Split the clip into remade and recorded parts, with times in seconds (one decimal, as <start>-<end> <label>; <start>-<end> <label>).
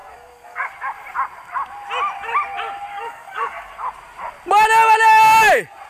0.0-0.7 remade; 0.7-2.9 recorded; 2.9-3.7 remade; 3.7-5.9 recorded